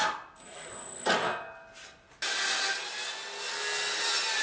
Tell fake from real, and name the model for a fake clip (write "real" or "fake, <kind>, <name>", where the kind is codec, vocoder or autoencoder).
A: real